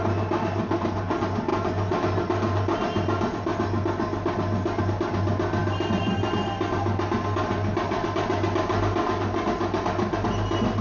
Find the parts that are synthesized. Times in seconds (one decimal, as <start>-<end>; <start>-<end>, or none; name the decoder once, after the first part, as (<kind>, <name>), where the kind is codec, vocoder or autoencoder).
none